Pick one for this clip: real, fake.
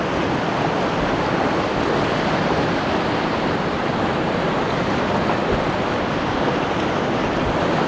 real